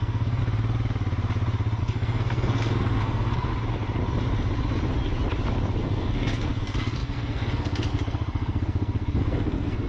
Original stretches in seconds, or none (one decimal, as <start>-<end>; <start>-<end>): 0.4-1.8; 3.5-5.8